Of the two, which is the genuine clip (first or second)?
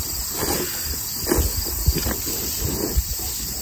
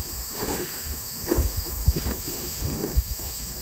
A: first